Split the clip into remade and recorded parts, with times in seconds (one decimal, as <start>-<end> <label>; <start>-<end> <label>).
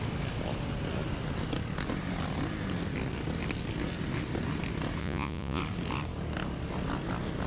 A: 0.0-5.0 recorded; 5.0-5.6 remade; 5.6-7.5 recorded